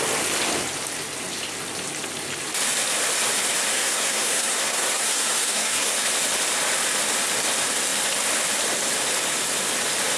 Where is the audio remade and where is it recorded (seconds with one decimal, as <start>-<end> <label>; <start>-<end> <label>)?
0.0-3.7 recorded; 3.7-5.9 remade; 5.9-10.2 recorded